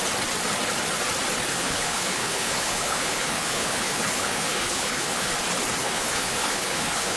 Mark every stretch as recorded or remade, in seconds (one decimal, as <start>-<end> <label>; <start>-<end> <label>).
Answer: 0.0-1.5 recorded; 1.5-5.3 remade; 5.3-5.8 recorded; 5.8-7.2 remade